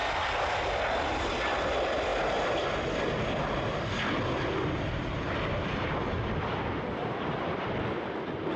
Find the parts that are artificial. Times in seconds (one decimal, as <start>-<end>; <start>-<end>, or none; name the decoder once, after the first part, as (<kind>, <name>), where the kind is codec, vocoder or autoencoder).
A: 0.0-0.8 (vocoder, BigVGAN v2)